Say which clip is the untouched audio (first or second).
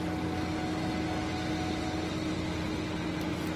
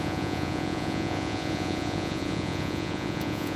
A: first